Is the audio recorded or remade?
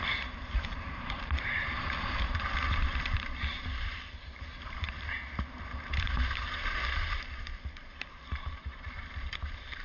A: remade